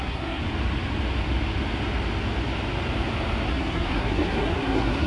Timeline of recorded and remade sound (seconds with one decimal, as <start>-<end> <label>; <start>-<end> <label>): 0.0-0.4 remade; 0.4-3.5 recorded; 3.5-5.1 remade

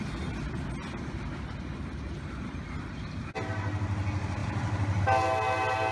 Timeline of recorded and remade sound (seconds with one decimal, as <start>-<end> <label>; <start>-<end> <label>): 0.0-5.9 recorded

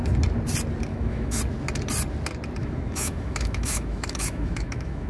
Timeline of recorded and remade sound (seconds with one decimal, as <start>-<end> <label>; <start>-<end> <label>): 0.0-0.9 recorded; 0.9-1.4 remade; 1.4-2.6 recorded; 2.6-5.1 remade

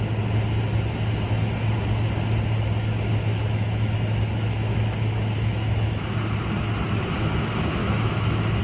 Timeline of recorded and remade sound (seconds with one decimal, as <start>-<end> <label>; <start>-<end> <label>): 0.0-3.3 recorded; 3.3-6.1 remade; 6.1-7.8 recorded; 7.8-8.6 remade

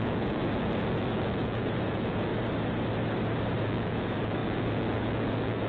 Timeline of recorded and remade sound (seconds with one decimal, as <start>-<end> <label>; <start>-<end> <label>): 0.0-2.3 remade; 2.3-3.6 recorded; 3.6-5.7 remade